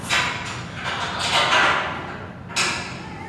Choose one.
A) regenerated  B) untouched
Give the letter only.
B